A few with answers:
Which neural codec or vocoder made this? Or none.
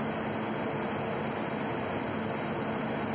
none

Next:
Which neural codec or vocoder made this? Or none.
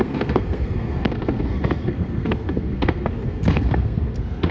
codec, SNAC